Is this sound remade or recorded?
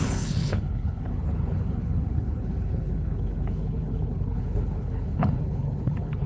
remade